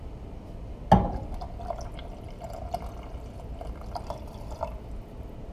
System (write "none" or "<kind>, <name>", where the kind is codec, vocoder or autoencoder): none